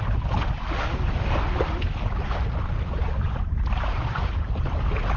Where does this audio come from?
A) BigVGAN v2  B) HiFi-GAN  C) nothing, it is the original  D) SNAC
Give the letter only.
C